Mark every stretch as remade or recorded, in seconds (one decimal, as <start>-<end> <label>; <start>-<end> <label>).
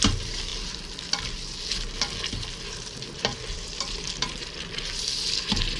0.0-0.5 remade; 0.5-2.6 recorded; 2.6-5.8 remade